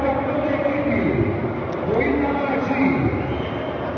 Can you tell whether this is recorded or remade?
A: recorded